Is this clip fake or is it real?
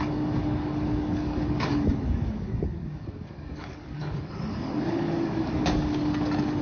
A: fake